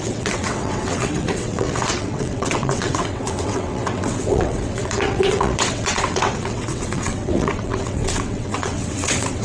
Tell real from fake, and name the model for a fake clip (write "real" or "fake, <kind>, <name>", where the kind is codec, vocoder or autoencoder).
fake, vocoder, WaveNeXt